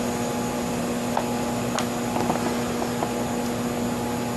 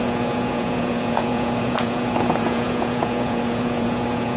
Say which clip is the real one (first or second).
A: first